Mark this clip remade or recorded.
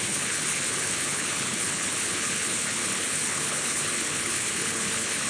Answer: remade